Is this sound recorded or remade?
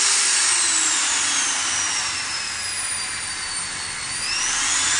remade